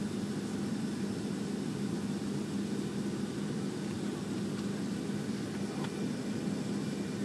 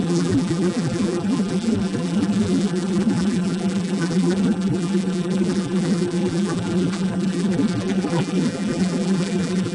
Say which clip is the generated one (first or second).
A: second